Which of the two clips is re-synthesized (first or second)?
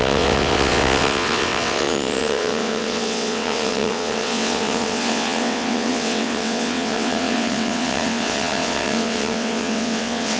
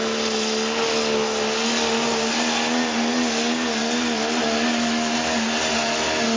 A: first